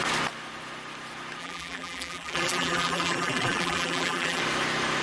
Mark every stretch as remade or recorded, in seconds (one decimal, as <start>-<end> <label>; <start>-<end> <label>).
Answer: 0.0-1.4 recorded; 1.4-4.4 remade; 4.4-5.0 recorded